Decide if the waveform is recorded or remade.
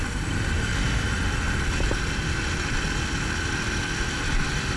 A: recorded